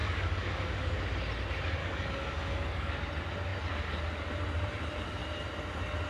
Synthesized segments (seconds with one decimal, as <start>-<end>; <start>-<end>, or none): 0.0-1.0; 1.8-2.9